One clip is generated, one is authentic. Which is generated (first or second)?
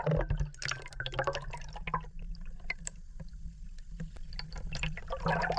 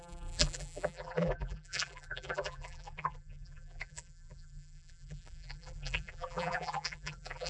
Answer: second